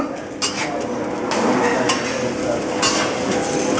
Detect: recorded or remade recorded